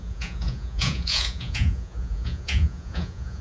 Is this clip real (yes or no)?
no